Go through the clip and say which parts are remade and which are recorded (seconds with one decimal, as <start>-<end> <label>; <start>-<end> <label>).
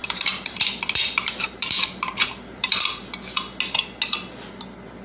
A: 0.0-3.0 remade; 3.0-5.0 recorded